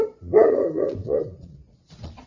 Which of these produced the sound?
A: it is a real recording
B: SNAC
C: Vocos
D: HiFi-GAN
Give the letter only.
C